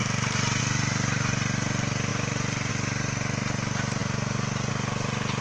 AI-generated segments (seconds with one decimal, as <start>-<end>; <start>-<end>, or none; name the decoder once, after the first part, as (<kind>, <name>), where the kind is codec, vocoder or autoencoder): 0.0-0.6 (vocoder, BigVGAN v2); 2.1-2.7